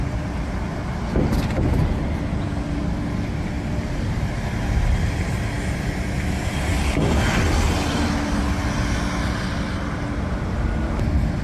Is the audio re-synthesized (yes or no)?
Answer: no